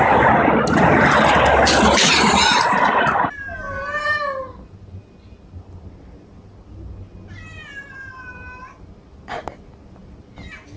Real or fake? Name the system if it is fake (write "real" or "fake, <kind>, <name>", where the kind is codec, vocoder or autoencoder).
real